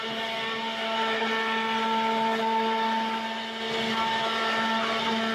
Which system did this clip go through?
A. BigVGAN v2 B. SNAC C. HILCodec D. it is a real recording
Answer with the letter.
D